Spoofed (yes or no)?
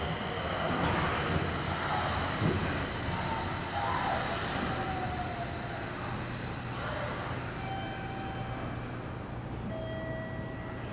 no